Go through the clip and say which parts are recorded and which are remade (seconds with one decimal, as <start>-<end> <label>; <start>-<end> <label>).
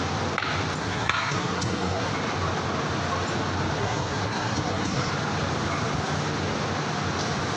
0.0-0.8 recorded; 0.8-2.1 remade; 2.1-3.8 recorded; 3.8-5.1 remade; 5.1-7.6 recorded